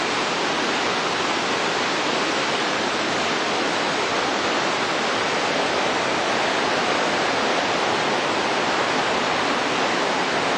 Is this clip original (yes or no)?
yes